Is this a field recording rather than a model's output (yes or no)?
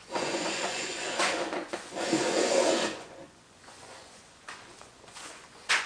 no